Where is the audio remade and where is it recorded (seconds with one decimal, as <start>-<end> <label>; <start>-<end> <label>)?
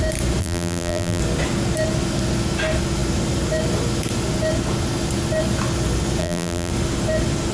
0.0-0.4 recorded; 0.4-1.2 remade; 1.2-6.2 recorded; 6.2-6.7 remade; 6.7-7.5 recorded